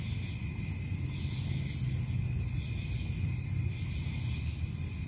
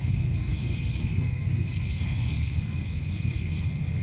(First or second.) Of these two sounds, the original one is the first